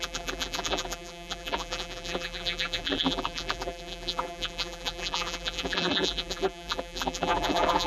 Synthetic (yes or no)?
yes